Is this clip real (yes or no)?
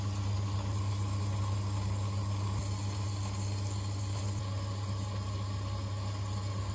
yes